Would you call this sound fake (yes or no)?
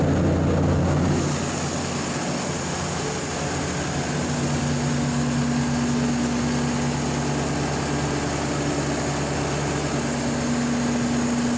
no